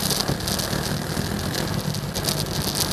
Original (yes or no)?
yes